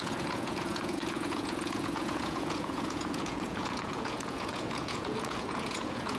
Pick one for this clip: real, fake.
fake